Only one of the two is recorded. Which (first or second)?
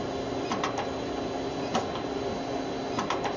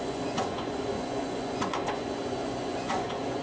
first